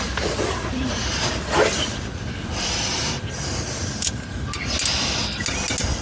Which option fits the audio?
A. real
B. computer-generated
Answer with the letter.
A